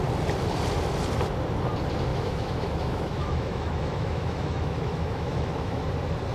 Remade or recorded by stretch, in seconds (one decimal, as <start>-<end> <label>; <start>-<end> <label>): 0.0-2.1 recorded; 2.1-5.8 remade; 5.8-6.3 recorded